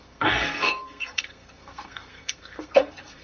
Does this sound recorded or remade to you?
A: remade